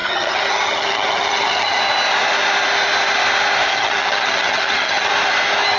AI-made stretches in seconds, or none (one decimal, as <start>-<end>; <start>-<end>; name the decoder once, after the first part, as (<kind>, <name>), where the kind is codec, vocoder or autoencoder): 0.0-1.8 (vocoder, HiFi-GAN); 3.7-5.1

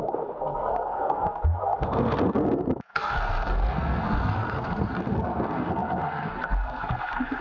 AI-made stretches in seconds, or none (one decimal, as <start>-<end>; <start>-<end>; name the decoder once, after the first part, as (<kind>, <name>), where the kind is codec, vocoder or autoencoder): 0.0-7.4 (codec, SNAC)

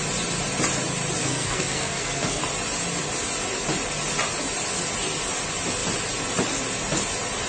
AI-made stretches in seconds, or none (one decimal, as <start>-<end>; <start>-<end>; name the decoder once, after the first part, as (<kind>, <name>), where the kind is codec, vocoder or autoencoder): 1.2-2.4 (codec, SNAC)

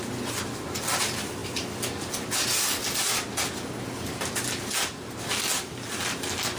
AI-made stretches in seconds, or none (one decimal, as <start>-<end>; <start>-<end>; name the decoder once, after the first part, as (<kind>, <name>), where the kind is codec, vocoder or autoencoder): none

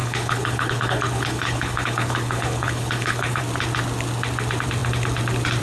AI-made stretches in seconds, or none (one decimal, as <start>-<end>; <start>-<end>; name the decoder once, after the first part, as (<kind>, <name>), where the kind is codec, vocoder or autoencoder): 0.0-3.4 (codec, HILCodec)

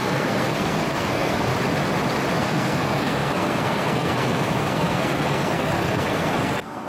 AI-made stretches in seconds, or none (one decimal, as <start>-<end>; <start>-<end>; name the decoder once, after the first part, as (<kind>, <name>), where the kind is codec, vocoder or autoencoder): 0.0-1.5 (codec, SNAC); 2.4-6.9